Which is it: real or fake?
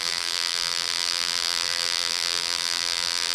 fake